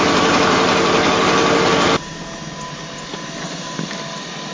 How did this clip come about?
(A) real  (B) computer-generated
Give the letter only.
A